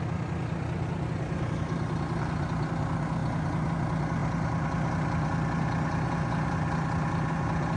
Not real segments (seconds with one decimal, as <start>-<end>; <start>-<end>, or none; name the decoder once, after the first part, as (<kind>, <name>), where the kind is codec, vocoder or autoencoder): none